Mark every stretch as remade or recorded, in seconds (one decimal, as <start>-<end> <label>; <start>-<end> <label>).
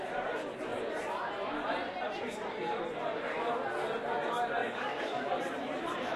0.0-4.6 recorded; 4.6-5.3 remade; 5.3-6.2 recorded